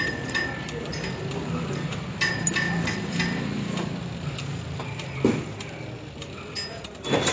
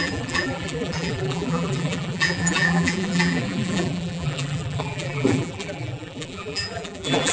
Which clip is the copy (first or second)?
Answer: second